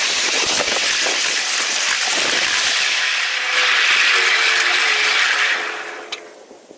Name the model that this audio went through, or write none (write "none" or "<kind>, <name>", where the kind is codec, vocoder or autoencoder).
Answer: none